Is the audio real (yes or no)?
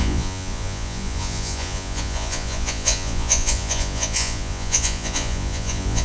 no